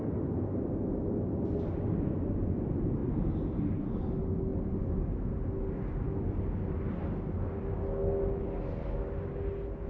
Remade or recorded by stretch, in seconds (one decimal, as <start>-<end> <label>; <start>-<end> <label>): 0.0-9.9 recorded